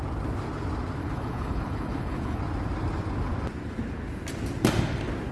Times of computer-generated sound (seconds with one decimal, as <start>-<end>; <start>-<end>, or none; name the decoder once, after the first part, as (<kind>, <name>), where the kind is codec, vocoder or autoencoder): 1.0-2.4 (codec, HILCodec)